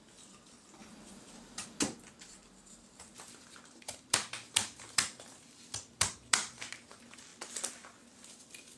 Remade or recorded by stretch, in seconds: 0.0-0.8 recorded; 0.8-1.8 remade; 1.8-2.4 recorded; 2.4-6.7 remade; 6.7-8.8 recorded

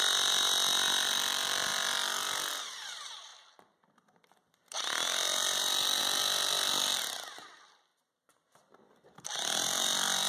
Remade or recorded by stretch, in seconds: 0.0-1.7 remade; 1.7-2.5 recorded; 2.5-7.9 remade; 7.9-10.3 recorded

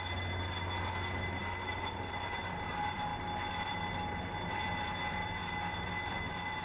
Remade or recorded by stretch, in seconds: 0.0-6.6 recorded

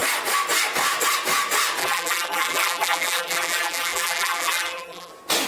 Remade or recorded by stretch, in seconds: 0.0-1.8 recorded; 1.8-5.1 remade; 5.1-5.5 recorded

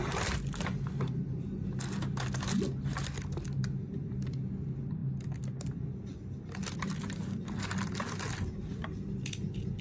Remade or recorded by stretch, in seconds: 0.0-9.8 recorded